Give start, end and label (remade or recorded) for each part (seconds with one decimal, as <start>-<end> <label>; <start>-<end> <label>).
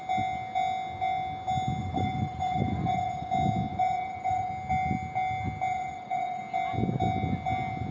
0.0-1.8 recorded; 1.8-3.3 remade; 3.3-3.7 recorded; 3.7-4.5 remade; 4.5-5.7 recorded; 5.7-6.4 remade; 6.4-7.9 recorded